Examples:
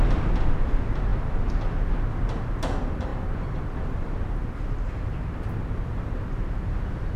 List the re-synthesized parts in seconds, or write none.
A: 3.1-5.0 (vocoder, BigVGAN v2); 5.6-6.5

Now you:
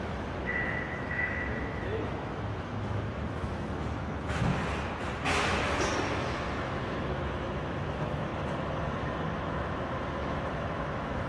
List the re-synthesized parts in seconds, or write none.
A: 0.0-4.5 (autoencoder, DAC-VAE); 6.1-11.3

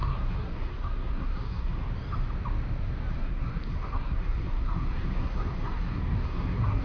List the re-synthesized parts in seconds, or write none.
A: 0.0-1.9 (codec, SNAC); 3.1-6.8

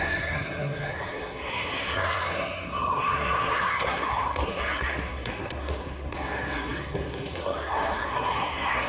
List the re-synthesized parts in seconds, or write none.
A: 0.0-8.9 (codec, SNAC)

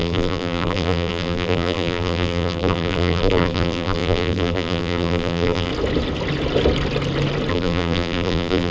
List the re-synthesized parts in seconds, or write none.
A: 0.0-5.7 (vocoder, BigVGAN v2); 7.5-8.7

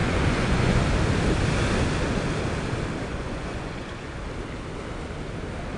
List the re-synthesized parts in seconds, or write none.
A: 0.0-0.8 (vocoder, Vocos); 3.1-4.2

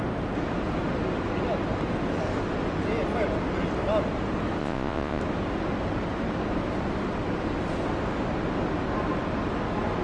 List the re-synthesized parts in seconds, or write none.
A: 4.6-5.2 (vocoder, Vocos)

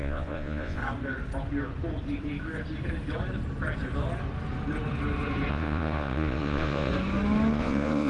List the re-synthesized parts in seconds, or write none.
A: 0.0-0.8 (vocoder, Vocos); 5.5-6.9; 7.5-8.1